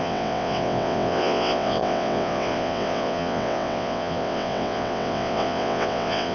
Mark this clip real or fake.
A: fake